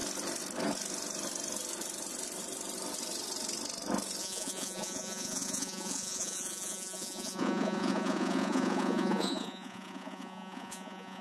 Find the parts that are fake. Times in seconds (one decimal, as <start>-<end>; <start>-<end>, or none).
4.2-11.2